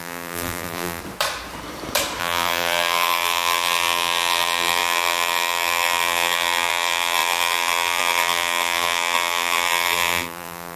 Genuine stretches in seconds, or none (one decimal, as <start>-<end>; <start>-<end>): 1.0-2.2